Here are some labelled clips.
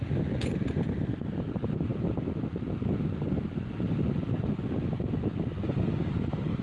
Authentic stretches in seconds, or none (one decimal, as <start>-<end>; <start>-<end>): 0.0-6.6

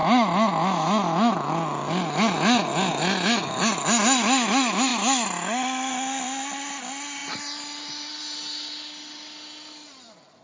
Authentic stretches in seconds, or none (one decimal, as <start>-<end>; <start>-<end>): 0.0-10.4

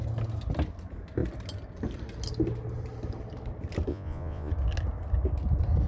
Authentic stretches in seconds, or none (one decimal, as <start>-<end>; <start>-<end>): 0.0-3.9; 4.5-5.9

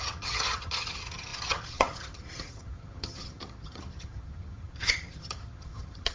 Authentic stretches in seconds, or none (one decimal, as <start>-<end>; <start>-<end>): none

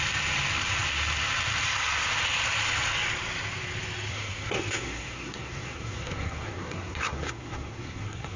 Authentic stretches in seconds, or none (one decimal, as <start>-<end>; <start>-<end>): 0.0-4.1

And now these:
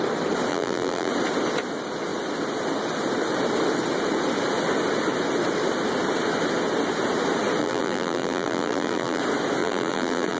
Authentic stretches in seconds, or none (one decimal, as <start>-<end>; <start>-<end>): 0.0-0.5; 1.1-7.6; 9.2-9.6

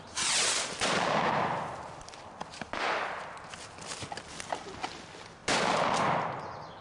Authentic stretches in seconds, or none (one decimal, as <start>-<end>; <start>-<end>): 0.0-6.8